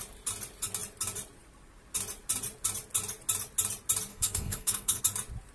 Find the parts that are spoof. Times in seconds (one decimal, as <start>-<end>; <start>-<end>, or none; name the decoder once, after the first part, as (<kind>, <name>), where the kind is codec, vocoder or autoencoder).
4.1-5.0 (codec, SNAC)

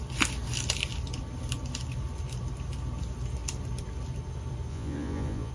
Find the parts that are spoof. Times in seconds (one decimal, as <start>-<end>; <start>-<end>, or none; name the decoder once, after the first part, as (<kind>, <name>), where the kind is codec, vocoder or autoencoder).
4.7-5.5 (vocoder, Vocos)

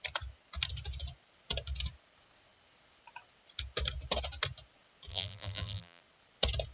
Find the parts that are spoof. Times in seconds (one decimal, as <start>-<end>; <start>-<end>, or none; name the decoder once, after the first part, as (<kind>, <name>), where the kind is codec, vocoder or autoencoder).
5.1-6.0 (vocoder, BigVGAN v2)

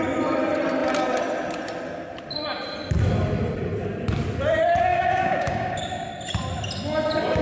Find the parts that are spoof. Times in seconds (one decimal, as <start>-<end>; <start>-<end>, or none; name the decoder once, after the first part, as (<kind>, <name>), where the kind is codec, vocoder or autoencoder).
4.9-6.1 (codec, DAC)

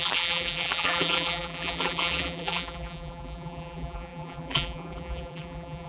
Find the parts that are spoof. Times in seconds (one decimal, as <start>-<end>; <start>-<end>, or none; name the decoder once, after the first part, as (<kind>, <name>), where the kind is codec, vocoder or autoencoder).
0.0-5.9 (vocoder, BigVGAN v2)